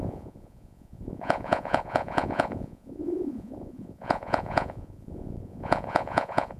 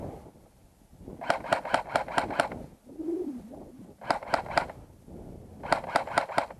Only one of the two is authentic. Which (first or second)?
second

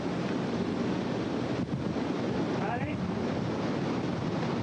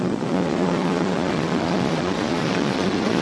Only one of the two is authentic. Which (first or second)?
first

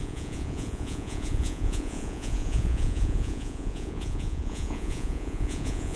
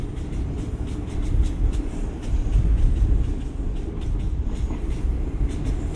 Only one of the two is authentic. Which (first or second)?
second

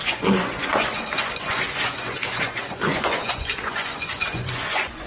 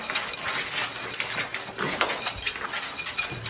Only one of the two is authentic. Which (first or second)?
second